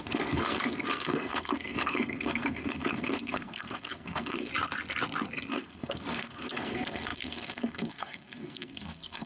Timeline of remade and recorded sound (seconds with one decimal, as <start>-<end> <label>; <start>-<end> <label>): 0.0-4.5 remade; 4.5-5.5 recorded; 5.5-9.3 remade